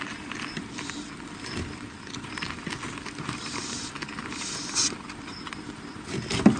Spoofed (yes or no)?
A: no